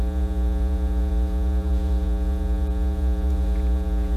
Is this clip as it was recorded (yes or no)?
no